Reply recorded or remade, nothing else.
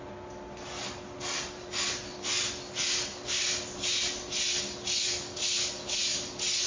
recorded